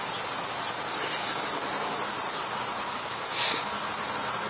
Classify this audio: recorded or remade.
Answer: recorded